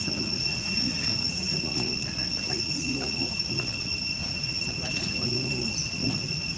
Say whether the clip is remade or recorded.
remade